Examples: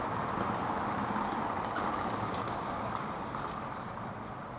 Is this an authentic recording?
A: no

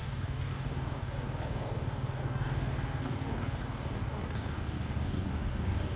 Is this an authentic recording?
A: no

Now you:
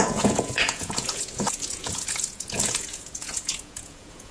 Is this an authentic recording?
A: no